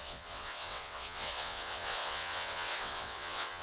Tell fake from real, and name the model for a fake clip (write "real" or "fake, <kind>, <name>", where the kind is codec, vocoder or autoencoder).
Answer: fake, vocoder, WaveNeXt